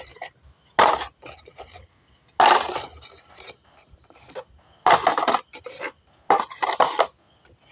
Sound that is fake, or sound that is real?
real